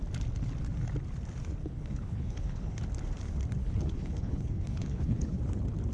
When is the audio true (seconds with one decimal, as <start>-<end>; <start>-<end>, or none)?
0.0-1.6; 2.8-3.6; 5.4-5.9